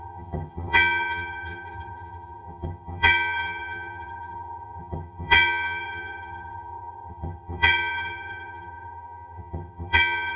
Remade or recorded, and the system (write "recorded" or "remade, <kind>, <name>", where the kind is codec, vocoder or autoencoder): remade, vocoder, HiFi-GAN